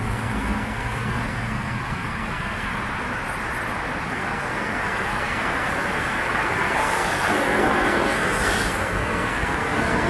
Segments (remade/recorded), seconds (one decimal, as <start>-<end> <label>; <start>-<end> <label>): 0.0-2.7 remade; 2.7-4.1 recorded; 4.1-10.1 remade